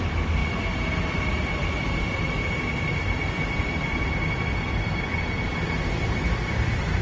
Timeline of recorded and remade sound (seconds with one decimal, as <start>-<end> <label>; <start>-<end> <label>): 0.0-7.0 remade